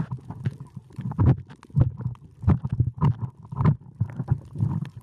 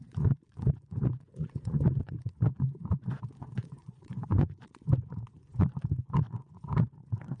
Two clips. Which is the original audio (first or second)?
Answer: first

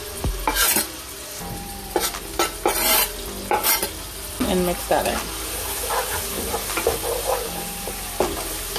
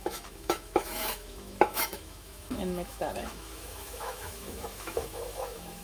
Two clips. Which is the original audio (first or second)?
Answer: first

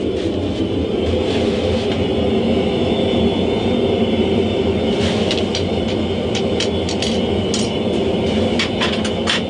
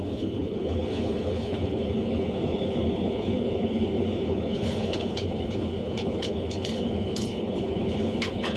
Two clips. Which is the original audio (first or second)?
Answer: first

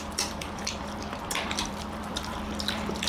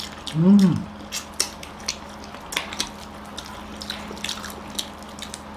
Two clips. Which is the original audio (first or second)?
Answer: second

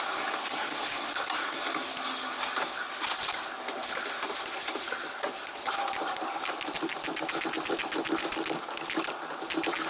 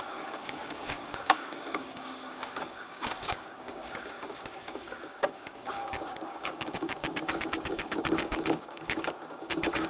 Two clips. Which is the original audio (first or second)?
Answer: first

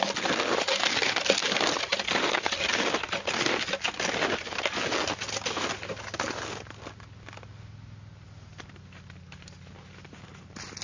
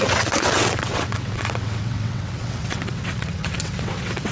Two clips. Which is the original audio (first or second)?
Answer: first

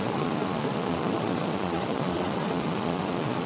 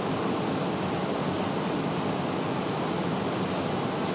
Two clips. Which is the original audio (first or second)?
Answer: second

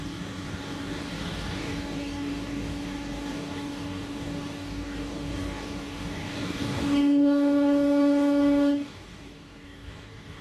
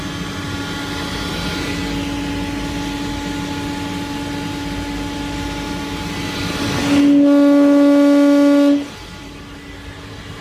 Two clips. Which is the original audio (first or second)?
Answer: second